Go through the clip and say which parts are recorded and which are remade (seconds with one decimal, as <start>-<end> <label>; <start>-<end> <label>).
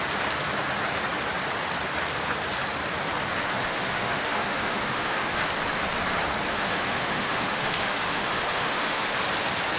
0.0-3.6 recorded; 3.6-5.5 remade; 5.5-6.5 recorded; 6.5-9.2 remade; 9.2-9.8 recorded